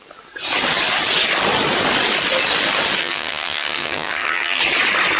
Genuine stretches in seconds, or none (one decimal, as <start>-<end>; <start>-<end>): 0.0-3.0; 4.6-5.2